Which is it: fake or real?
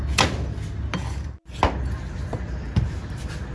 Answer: real